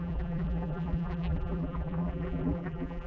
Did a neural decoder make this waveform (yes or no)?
yes